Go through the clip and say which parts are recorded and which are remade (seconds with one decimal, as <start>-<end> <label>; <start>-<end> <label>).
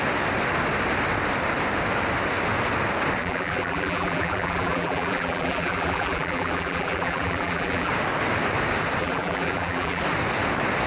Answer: 0.0-3.2 recorded; 3.2-7.9 remade; 7.9-9.0 recorded; 9.0-10.0 remade; 10.0-10.9 recorded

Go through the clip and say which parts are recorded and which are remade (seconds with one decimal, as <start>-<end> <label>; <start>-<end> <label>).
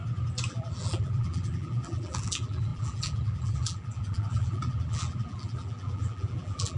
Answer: 0.0-0.5 recorded; 0.5-6.8 remade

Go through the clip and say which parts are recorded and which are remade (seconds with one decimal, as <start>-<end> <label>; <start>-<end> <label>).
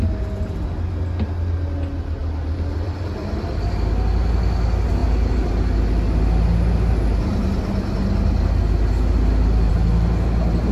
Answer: 0.0-2.2 recorded; 2.2-3.7 remade; 3.7-10.7 recorded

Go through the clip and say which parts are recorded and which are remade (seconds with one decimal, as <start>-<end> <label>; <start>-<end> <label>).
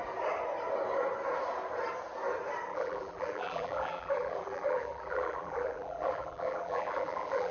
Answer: 0.0-2.7 recorded; 2.7-7.5 remade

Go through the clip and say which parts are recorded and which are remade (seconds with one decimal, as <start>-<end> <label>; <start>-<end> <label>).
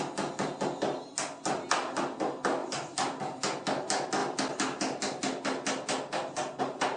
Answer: 0.0-2.6 recorded; 2.6-3.2 remade; 3.2-7.0 recorded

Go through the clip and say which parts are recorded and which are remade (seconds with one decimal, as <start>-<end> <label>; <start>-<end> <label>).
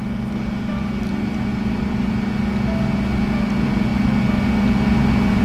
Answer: 0.0-1.5 recorded; 1.5-2.1 remade; 2.1-5.4 recorded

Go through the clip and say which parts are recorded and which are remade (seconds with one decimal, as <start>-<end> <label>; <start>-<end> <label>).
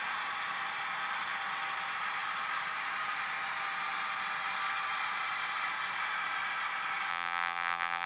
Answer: 0.0-7.1 recorded; 7.1-8.1 remade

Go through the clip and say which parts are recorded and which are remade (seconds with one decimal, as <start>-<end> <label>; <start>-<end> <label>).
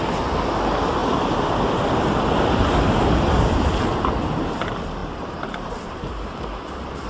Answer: 0.0-1.0 recorded; 1.0-1.6 remade; 1.6-5.0 recorded; 5.0-5.7 remade; 5.7-7.1 recorded